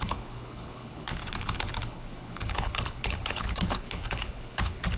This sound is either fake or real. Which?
fake